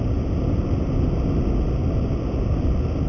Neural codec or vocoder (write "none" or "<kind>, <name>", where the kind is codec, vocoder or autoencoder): none